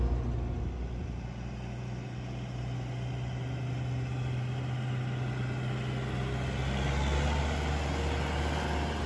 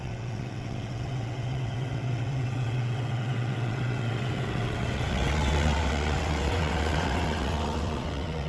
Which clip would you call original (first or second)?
first